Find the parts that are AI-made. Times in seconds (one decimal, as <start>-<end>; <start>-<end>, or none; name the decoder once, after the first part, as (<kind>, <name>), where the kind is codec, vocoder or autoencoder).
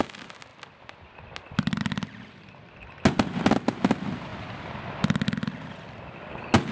none